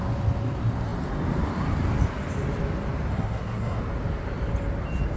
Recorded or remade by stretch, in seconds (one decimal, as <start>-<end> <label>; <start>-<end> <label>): 0.0-3.1 recorded; 3.1-3.8 remade; 3.8-5.2 recorded